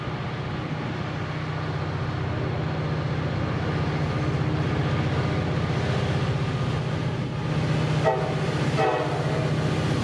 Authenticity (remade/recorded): recorded